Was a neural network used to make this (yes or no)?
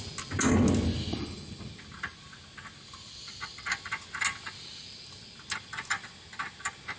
no